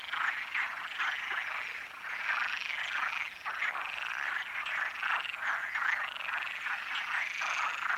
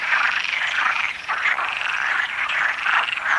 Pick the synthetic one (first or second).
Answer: second